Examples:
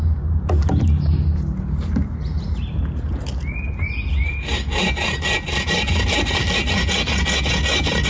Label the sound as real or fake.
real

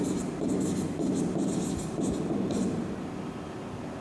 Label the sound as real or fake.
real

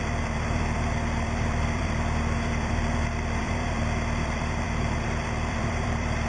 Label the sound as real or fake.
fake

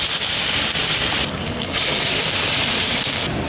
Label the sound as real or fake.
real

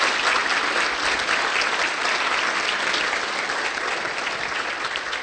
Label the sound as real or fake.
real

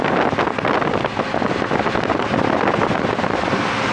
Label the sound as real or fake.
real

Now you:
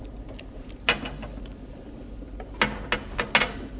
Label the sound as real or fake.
real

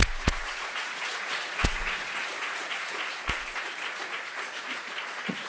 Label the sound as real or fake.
fake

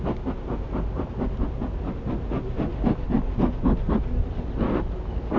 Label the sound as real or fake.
real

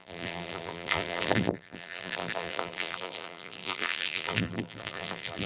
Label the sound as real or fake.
fake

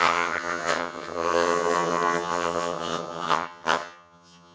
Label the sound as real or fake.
fake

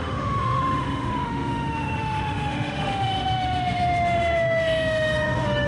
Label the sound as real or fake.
fake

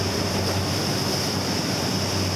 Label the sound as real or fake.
real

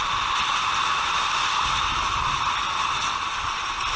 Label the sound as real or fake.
real